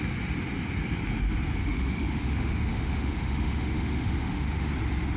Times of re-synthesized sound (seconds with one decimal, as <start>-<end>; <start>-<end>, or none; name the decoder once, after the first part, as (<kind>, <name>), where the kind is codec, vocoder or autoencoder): 1.6-4.7 (autoencoder, DAC-VAE)